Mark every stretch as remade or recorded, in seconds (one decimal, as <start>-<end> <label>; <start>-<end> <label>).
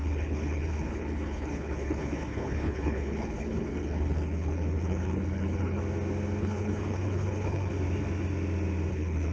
0.0-5.8 remade; 5.8-6.4 recorded; 6.4-7.7 remade; 7.7-8.9 recorded; 8.9-9.3 remade